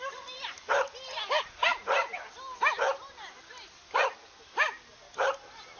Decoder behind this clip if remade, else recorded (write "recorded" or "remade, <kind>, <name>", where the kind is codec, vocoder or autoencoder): recorded